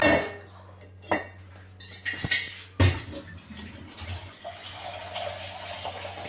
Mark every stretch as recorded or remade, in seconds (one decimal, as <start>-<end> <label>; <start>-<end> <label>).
0.0-4.2 recorded; 4.2-4.8 remade; 4.8-6.3 recorded